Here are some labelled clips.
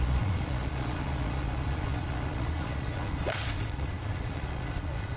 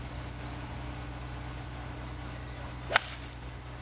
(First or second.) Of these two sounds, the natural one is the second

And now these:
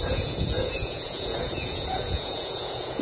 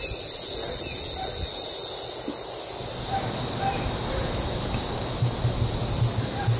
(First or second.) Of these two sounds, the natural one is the second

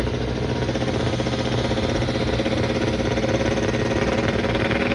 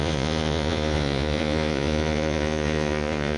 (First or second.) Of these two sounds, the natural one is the first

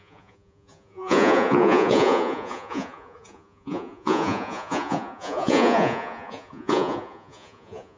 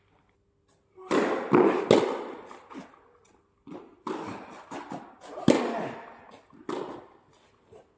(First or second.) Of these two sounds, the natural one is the second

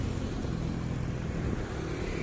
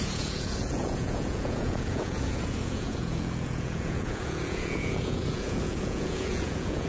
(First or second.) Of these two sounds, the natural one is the first